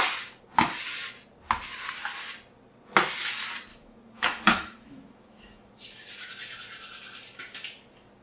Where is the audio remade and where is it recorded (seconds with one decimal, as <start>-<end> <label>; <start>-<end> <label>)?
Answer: 0.0-3.7 recorded; 3.7-5.7 remade; 5.7-8.2 recorded